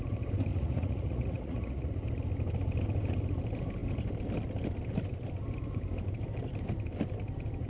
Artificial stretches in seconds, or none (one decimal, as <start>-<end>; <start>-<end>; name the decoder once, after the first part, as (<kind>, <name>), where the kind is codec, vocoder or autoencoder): 0.5-1.9 (vocoder, Vocos)